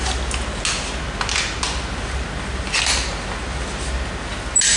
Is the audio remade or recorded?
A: recorded